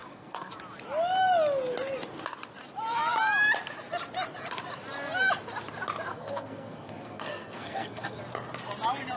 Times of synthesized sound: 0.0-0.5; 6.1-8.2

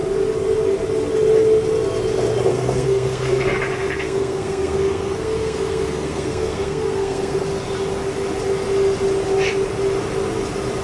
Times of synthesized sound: 2.5-7.4